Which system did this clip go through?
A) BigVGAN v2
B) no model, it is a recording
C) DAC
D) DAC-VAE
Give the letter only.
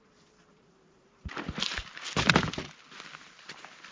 B